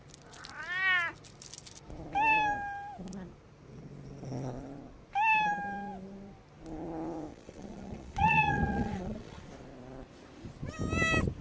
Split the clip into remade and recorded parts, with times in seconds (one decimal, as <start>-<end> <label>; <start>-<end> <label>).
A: 0.0-7.3 recorded; 7.3-9.4 remade; 9.4-11.4 recorded